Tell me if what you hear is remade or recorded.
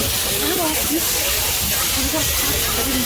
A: recorded